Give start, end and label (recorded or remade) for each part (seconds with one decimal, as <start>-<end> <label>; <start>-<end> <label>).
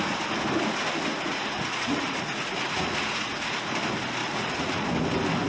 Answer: 0.0-1.1 recorded; 1.1-3.6 remade; 3.6-4.2 recorded; 4.2-4.9 remade; 4.9-5.5 recorded